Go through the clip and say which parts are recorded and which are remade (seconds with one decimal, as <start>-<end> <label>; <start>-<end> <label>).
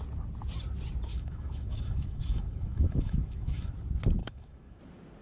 0.0-1.1 recorded; 1.1-3.7 remade; 3.7-4.2 recorded; 4.2-4.8 remade; 4.8-5.2 recorded